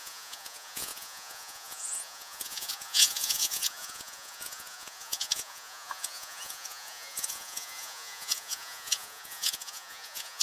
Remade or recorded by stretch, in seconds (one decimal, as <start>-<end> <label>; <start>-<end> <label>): 0.0-10.4 remade